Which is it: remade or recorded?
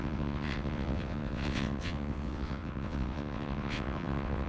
remade